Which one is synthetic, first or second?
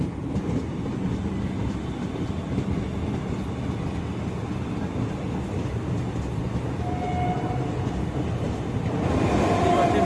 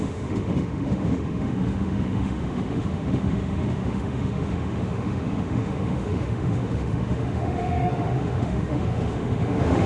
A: second